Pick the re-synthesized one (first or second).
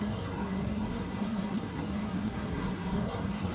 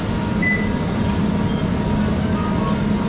first